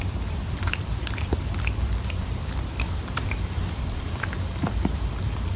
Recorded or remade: remade